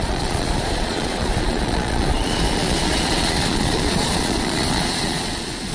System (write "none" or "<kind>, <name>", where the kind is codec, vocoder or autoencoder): vocoder, Vocos